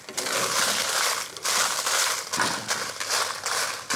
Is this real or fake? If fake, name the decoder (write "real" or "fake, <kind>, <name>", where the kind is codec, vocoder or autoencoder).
real